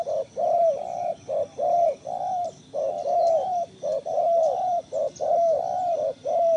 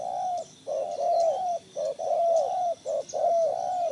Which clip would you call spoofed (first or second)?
first